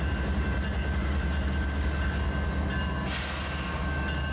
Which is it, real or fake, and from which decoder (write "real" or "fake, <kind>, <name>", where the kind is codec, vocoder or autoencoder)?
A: real